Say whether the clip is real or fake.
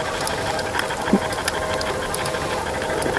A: real